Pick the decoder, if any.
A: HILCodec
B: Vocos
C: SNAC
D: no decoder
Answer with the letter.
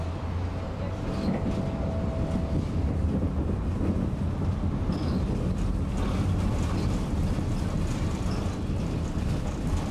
D